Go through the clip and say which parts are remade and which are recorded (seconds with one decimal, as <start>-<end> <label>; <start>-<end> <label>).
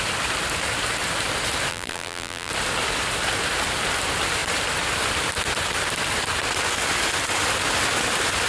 0.0-1.7 recorded; 1.7-2.5 remade; 2.5-8.5 recorded